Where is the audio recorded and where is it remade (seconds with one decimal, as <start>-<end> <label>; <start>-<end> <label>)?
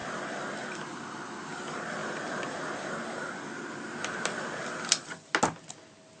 0.0-6.2 recorded